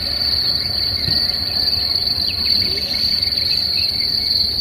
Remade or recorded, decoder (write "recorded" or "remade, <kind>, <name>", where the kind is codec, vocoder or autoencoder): recorded